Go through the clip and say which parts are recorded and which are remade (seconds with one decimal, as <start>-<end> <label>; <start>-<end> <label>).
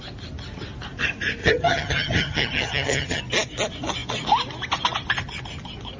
0.0-1.4 recorded; 1.4-3.2 remade; 3.2-6.0 recorded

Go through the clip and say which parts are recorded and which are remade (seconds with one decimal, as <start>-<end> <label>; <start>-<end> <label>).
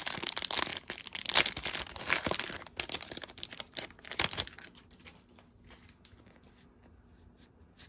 0.0-7.9 recorded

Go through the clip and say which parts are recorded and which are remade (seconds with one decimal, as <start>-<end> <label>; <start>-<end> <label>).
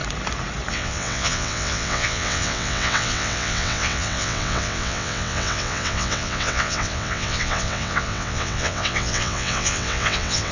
0.0-0.7 recorded; 0.7-10.5 remade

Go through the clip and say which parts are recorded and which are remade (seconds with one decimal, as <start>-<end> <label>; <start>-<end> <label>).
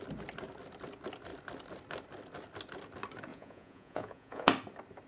0.0-3.3 recorded; 3.3-4.5 remade; 4.5-5.1 recorded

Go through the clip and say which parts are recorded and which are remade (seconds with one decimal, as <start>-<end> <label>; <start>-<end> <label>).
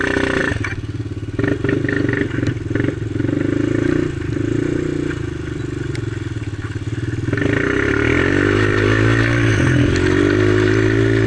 0.0-11.3 recorded